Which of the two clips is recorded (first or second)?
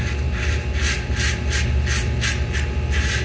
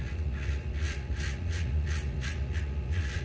first